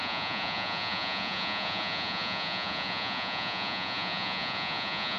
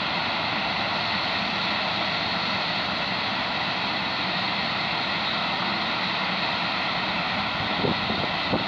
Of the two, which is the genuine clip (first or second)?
second